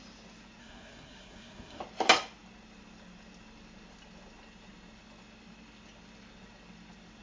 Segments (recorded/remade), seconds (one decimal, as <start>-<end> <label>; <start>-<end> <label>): 0.0-0.6 recorded; 0.6-1.8 remade; 1.8-7.2 recorded